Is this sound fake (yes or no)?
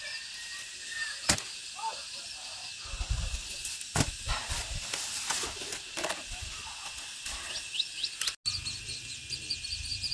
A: no